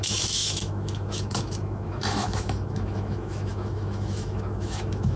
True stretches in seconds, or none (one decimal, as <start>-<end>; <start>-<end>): none